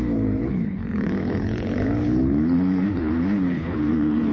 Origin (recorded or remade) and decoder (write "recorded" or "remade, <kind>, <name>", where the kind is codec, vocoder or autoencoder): remade, codec, HILCodec